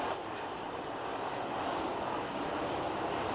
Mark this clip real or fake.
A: fake